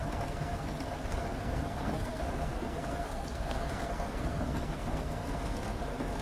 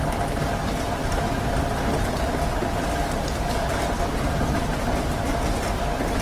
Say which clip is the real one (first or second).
second